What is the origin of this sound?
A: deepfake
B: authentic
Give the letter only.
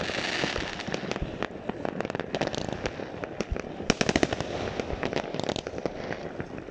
B